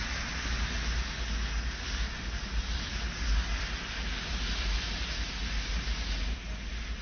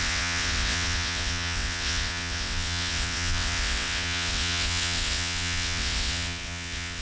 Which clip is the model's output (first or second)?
second